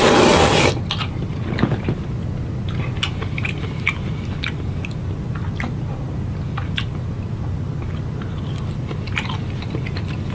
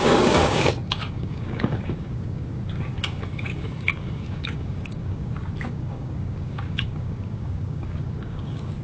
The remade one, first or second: second